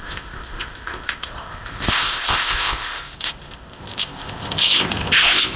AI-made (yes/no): yes